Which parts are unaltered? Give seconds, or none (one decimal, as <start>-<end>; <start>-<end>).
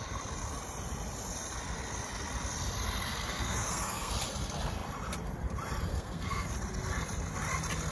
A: 0.0-3.1; 4.1-5.9; 6.5-7.9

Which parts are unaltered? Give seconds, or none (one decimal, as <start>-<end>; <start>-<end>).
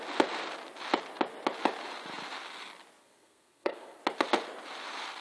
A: 0.0-3.0; 4.0-5.2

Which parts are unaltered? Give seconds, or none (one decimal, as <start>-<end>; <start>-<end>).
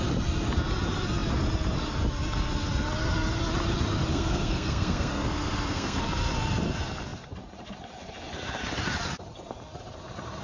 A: 0.0-4.1; 6.0-10.4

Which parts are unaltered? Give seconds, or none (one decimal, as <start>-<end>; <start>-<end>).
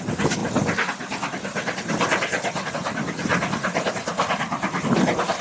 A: 0.0-5.4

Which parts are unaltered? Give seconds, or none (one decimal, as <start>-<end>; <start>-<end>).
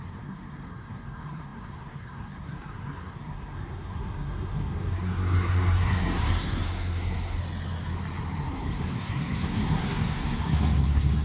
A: 7.4-8.4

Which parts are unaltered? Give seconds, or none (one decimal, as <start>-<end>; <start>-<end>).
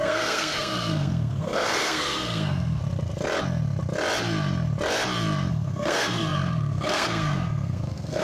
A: 2.8-5.5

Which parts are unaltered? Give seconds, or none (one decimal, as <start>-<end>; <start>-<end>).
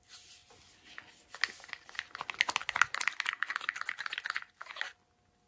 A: 0.0-5.5